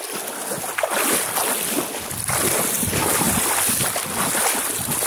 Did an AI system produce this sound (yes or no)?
no